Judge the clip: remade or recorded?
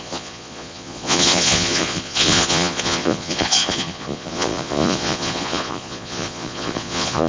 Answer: remade